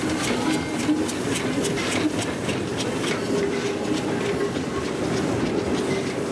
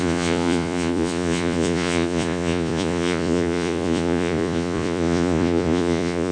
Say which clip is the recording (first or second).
first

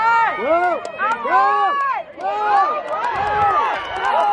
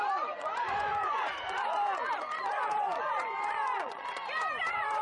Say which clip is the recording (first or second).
first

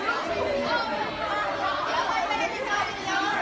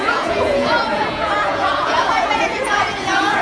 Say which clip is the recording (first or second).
first